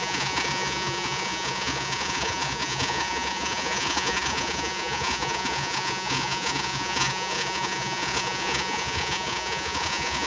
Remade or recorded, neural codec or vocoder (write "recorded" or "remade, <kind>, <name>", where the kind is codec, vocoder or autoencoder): remade, vocoder, Vocos